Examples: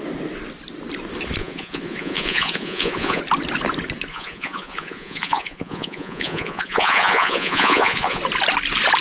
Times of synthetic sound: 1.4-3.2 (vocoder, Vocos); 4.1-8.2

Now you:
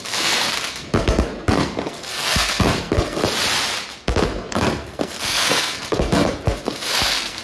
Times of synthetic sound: 0.0-3.2 (codec, SNAC); 3.9-7.4

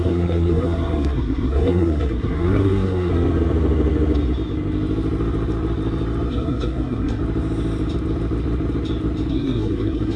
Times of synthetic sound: 0.0-3.1 (codec, SNAC); 6.3-7.2; 9.3-10.2

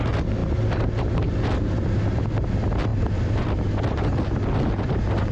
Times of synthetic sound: 2.9-3.7 (vocoder, BigVGAN v2)

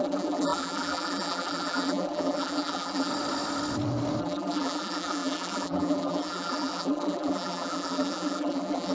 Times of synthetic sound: 0.0-3.1 (vocoder, BigVGAN v2); 4.2-8.9

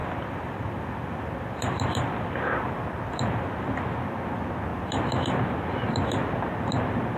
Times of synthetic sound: 0.0-3.0 (vocoder, BigVGAN v2)

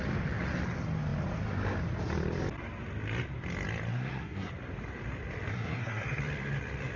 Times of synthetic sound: 3.9-4.5 (codec, SNAC); 5.5-6.2